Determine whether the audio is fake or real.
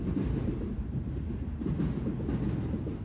real